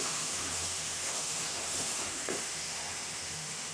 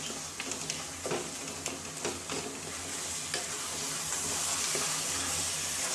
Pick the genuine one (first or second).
second